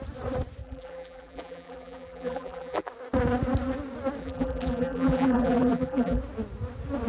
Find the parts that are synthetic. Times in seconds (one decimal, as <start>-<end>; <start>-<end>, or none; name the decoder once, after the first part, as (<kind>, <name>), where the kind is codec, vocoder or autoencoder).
0.6-2.9 (vocoder, BigVGAN v2); 4.2-6.2